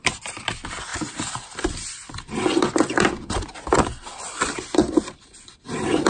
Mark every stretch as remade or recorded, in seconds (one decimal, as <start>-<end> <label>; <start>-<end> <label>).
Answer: 0.0-6.1 recorded

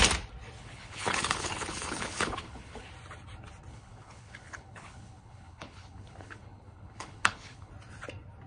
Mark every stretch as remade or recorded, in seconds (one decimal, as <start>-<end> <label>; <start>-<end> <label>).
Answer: 0.0-0.6 recorded; 0.6-2.9 remade; 2.9-3.7 recorded; 3.7-7.7 remade; 7.7-8.5 recorded

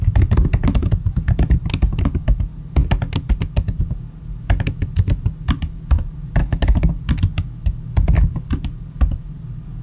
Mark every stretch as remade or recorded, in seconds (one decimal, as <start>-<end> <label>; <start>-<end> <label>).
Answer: 0.0-6.4 recorded; 6.4-6.9 remade; 6.9-9.8 recorded